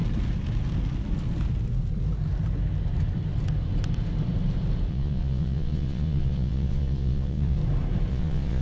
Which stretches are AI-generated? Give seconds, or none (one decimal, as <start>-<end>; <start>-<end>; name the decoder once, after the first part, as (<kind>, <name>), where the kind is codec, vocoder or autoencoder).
4.9-7.6 (vocoder, Vocos); 8.1-8.6